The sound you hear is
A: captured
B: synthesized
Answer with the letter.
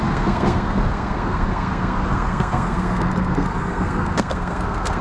B